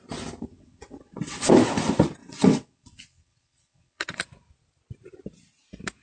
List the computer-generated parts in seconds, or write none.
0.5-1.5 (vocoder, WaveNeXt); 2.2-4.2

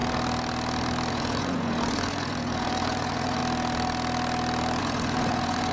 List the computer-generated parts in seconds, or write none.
1.1-3.4 (vocoder, Vocos); 4.8-5.7

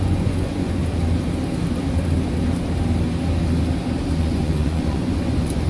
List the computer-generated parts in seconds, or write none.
0.0-0.8 (vocoder, Vocos); 4.2-5.7

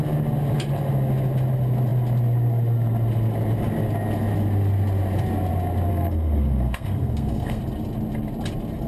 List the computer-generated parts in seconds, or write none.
5.9-7.6 (codec, SNAC)

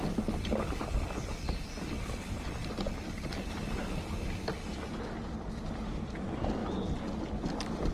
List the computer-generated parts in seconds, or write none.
none